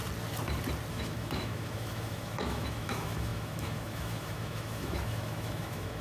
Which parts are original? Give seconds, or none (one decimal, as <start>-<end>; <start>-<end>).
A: 0.0-0.9